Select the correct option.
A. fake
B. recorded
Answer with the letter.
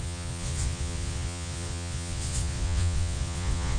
A